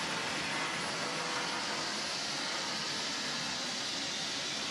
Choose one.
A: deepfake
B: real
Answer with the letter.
B